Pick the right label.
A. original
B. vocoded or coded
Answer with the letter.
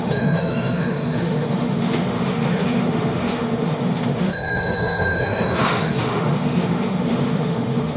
B